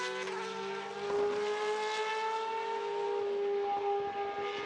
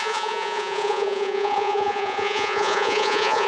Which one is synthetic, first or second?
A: second